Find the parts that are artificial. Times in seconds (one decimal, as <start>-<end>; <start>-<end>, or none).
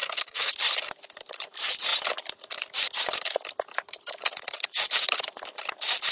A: 0.0-0.5